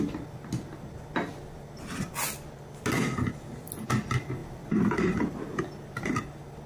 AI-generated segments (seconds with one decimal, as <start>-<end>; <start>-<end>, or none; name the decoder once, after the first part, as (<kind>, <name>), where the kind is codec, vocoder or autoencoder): 4.4-5.6 (vocoder, BigVGAN v2)